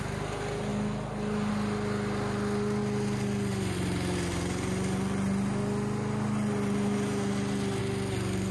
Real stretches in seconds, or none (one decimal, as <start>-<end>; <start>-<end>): 0.0-8.5